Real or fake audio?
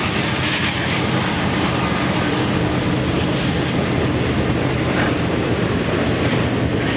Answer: real